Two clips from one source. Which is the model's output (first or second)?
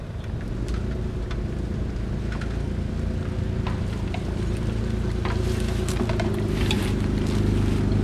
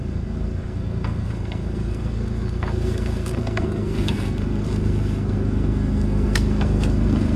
second